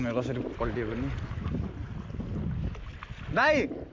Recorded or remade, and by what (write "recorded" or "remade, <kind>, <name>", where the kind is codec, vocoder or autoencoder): recorded